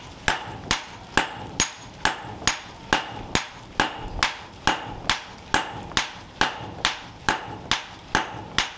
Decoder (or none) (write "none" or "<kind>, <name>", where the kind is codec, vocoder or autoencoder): none